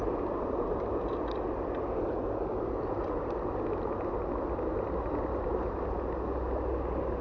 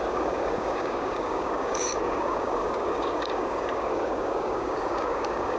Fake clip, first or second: second